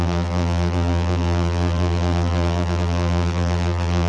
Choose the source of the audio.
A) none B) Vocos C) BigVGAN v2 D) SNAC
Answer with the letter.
C